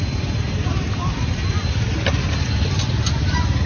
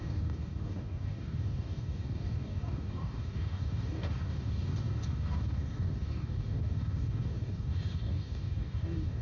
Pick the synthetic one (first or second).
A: second